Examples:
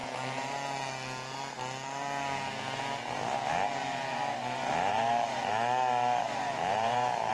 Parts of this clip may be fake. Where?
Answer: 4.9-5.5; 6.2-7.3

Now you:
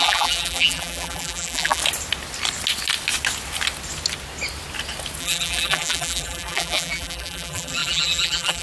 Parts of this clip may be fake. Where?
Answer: 0.0-1.8; 5.2-8.6

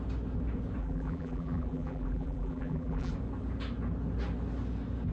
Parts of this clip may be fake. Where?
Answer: 0.8-3.1

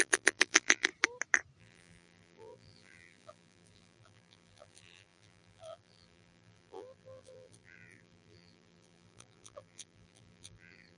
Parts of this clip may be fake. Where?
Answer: 0.0-0.9; 1.6-11.0

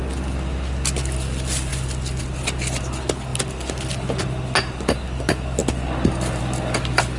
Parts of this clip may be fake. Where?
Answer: none

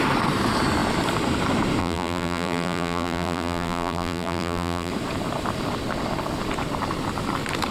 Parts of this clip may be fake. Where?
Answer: 1.8-4.9

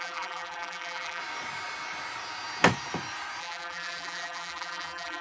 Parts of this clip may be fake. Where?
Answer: 0.0-1.2; 3.4-5.2